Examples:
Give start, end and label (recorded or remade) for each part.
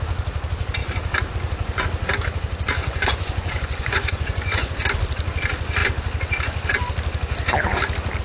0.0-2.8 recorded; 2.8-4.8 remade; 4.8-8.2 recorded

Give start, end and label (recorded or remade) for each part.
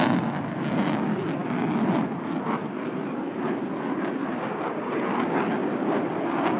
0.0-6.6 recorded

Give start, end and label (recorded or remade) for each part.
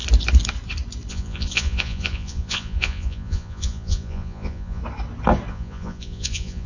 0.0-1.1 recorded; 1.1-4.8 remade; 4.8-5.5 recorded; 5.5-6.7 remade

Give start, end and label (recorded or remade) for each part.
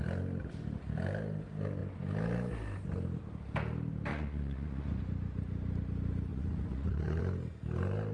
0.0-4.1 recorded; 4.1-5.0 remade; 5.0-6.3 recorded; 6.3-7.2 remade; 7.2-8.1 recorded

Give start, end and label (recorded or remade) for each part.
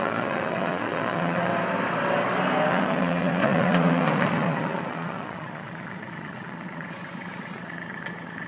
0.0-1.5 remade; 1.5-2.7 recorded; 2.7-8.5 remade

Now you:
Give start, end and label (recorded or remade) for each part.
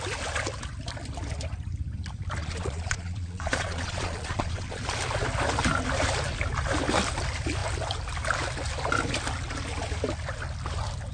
0.0-2.4 recorded; 2.4-4.8 remade; 4.8-11.1 recorded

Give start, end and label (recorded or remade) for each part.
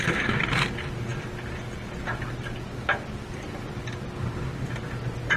0.0-5.4 recorded